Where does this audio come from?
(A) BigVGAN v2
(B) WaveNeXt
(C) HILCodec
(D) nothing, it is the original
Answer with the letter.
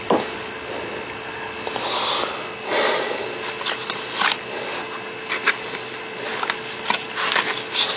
D